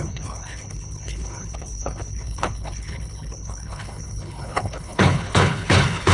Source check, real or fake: fake